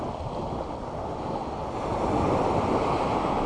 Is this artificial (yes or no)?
no